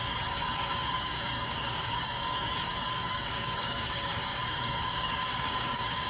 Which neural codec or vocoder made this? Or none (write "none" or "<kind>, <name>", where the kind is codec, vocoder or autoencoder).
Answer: codec, DAC